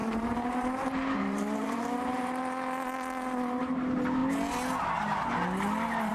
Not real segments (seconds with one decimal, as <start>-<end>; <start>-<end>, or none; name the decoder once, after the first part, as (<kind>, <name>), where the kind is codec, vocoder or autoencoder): 0.0-2.4 (vocoder, BigVGAN v2)